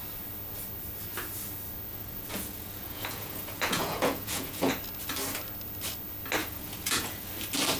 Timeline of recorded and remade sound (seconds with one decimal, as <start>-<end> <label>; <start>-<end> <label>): 0.0-1.9 recorded; 1.9-4.7 remade; 4.7-6.4 recorded; 6.4-7.3 remade; 7.3-7.8 recorded